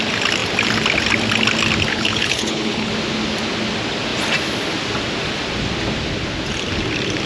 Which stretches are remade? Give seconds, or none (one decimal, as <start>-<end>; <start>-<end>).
1.9-2.9